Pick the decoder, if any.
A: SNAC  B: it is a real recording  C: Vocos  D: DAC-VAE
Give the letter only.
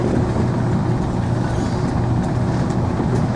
B